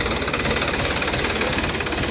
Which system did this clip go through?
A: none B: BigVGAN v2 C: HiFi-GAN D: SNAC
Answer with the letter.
A